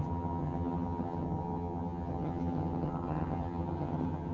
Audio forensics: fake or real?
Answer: fake